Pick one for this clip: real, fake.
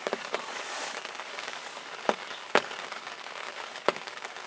fake